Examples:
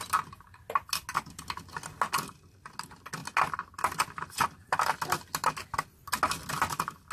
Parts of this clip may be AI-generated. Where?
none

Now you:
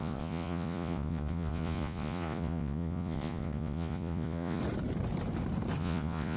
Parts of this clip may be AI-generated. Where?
0.0-4.6; 5.8-6.4

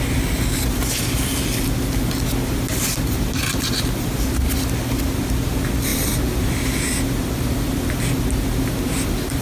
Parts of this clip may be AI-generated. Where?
5.9-6.8

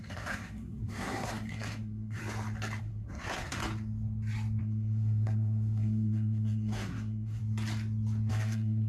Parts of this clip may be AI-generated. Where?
0.0-2.2; 2.8-3.6; 4.6-7.4; 8.3-8.9

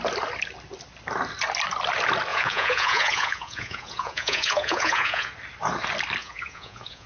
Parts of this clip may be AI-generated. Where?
2.3-5.3; 6.2-7.1